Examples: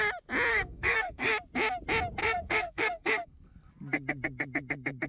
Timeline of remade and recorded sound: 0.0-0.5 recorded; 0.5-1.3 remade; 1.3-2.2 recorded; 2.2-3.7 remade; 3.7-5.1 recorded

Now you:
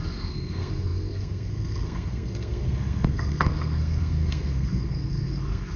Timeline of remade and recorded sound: 0.0-5.8 remade

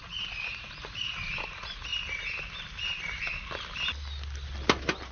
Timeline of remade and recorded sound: 0.0-1.9 remade; 1.9-5.1 recorded

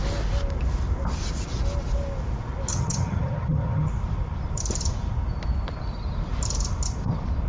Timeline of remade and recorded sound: 0.0-2.7 recorded; 2.7-3.9 remade; 3.9-7.5 recorded

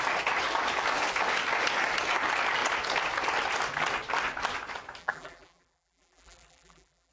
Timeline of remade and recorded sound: 0.0-5.0 recorded; 5.0-7.1 remade

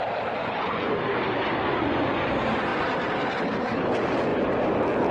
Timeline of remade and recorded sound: 0.0-0.4 recorded; 0.4-0.9 remade; 0.9-1.7 recorded; 1.7-2.3 remade; 2.3-5.1 recorded

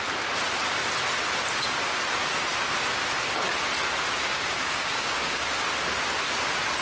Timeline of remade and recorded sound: 0.0-4.2 recorded; 4.2-5.5 remade; 5.5-6.8 recorded

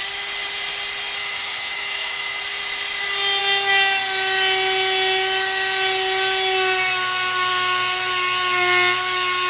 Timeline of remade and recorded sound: 0.0-1.2 recorded; 1.2-2.4 remade; 2.4-9.5 recorded